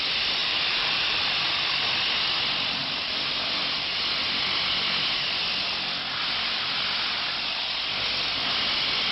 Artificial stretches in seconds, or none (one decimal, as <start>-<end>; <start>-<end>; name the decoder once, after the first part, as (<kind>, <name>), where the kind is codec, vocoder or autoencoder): 0.4-1.5 (vocoder, BigVGAN v2)